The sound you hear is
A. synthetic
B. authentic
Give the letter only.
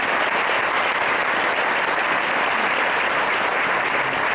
B